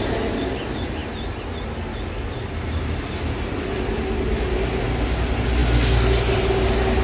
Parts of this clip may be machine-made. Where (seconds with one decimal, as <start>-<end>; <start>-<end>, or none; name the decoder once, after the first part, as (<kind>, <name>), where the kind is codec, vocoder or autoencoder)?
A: none